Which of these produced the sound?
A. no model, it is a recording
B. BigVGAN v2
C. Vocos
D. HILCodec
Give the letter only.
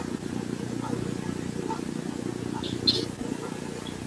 A